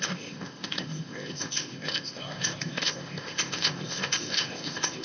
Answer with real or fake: fake